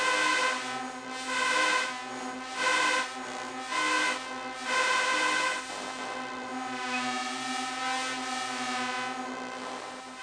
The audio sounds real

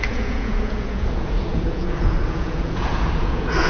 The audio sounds fake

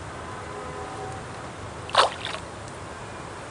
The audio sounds real